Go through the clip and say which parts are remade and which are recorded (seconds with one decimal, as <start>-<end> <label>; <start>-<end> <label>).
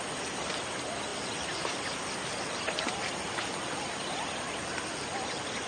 0.0-5.7 recorded